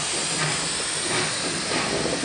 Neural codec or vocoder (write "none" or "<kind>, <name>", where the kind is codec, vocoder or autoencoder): none